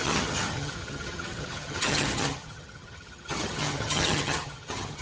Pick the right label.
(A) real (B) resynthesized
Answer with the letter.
B